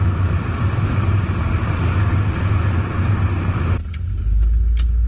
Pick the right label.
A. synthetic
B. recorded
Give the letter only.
B